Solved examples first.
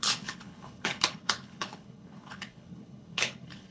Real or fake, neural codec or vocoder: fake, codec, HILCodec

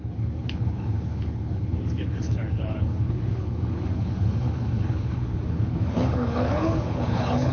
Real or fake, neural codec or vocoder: fake, codec, HILCodec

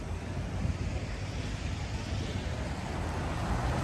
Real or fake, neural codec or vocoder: real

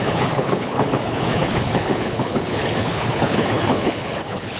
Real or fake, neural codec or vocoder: fake, codec, HILCodec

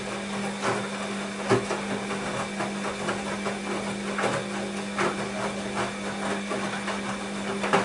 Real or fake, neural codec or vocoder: real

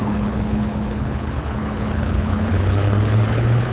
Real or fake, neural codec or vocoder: fake, codec, HILCodec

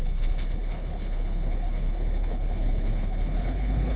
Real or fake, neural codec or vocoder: fake, codec, HILCodec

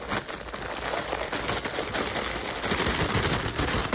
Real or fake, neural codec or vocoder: real